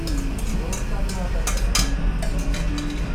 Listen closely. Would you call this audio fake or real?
real